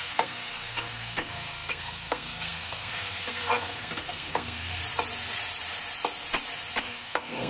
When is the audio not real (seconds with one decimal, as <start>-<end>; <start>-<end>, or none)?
0.0-4.8; 6.8-7.5